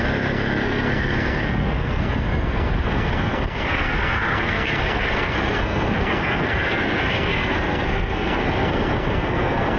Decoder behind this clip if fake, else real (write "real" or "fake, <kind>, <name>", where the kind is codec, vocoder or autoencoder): fake, codec, SNAC